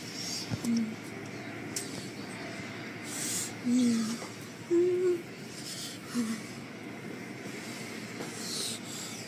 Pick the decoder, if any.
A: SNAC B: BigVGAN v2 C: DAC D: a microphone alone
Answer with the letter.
D